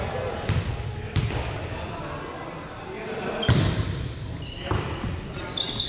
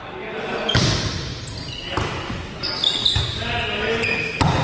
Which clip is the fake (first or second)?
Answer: first